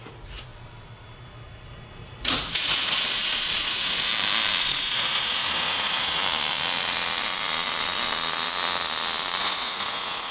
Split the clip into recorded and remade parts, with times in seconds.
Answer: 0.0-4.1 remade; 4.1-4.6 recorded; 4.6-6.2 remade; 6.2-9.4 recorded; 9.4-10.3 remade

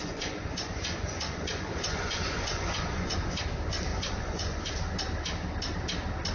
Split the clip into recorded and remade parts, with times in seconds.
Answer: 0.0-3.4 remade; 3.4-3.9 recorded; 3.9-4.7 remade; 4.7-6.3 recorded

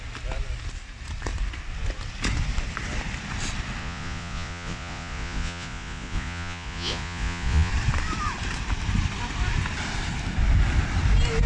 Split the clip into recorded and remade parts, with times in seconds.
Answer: 0.0-3.8 recorded; 3.8-7.7 remade; 7.7-11.5 recorded